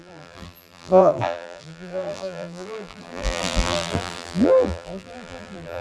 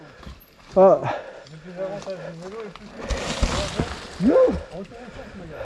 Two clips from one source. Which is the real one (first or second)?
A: second